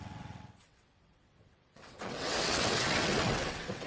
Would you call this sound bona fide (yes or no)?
no